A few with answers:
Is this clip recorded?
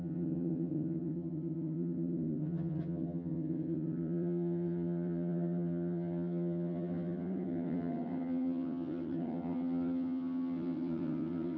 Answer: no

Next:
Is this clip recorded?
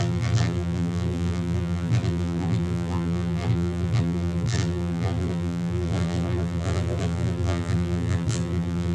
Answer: no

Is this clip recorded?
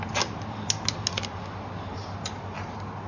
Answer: yes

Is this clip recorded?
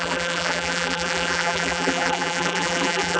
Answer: no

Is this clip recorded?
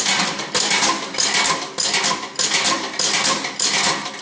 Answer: yes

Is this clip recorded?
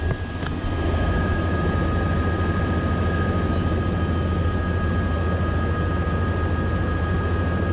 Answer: yes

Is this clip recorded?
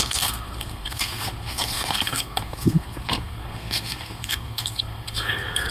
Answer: no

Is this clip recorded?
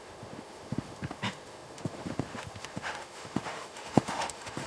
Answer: no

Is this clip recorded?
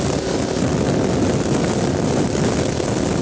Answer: yes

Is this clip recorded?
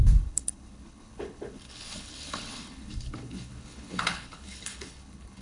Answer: no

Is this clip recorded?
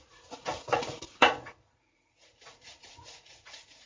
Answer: no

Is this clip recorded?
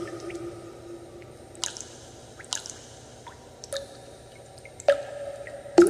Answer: yes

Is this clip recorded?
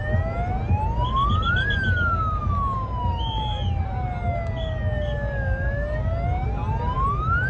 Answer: yes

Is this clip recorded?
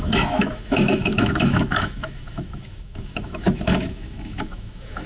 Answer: no